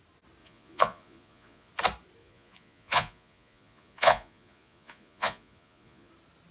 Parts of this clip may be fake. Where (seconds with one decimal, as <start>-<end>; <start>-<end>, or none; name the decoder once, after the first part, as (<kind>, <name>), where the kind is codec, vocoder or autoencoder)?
0.4-1.7 (vocoder, Vocos); 2.2-6.1